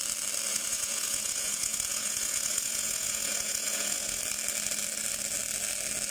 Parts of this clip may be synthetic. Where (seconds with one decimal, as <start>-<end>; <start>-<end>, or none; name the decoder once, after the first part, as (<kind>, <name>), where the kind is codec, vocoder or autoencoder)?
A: 0.5-4.2 (vocoder, Vocos)